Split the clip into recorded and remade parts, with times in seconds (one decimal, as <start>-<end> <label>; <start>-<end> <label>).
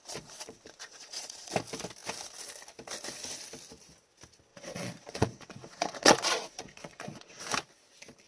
0.0-1.5 remade; 1.5-4.5 recorded; 4.5-7.4 remade; 7.4-8.3 recorded